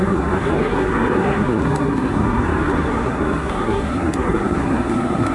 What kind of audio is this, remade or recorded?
remade